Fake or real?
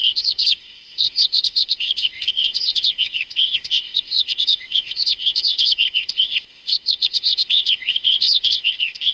fake